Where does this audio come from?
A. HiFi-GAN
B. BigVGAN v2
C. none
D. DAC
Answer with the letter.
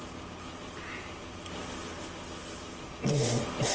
C